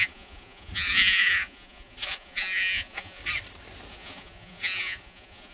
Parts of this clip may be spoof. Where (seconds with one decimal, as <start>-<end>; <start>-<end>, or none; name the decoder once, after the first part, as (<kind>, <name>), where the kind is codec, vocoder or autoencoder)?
0.0-3.2 (vocoder, Vocos); 3.9-5.5